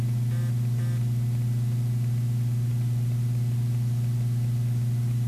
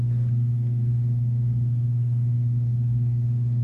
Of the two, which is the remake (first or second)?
second